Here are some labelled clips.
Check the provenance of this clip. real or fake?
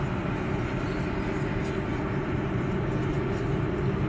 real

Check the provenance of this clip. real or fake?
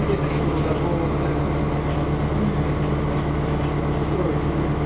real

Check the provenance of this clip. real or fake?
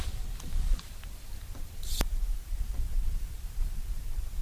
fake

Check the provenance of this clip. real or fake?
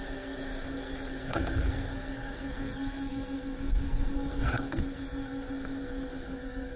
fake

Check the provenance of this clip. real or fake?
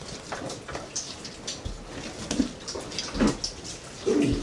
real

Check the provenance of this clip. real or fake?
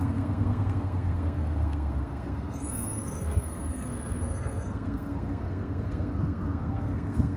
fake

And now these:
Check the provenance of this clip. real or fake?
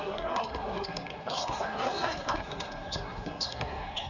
fake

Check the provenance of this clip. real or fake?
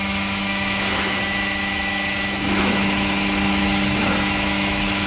fake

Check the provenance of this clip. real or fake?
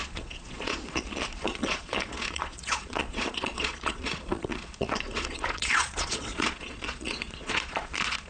fake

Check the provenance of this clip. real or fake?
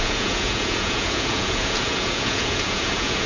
fake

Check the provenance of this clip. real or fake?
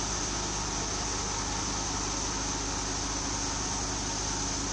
real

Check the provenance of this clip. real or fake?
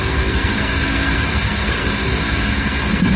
fake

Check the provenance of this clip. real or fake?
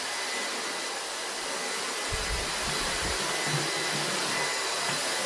real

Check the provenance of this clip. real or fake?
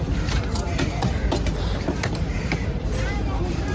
fake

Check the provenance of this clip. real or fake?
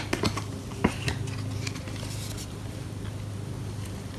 real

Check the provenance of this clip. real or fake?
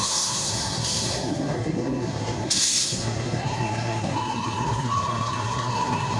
fake